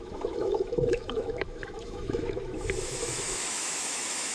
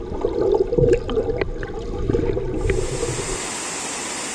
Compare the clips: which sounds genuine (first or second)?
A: second